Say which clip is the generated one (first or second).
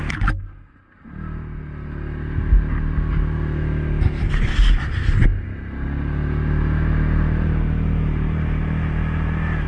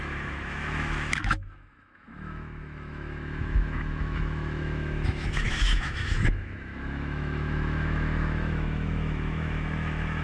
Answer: second